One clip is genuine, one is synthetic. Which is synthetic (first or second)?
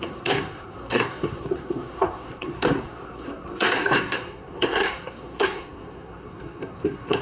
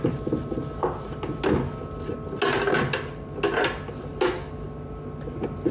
first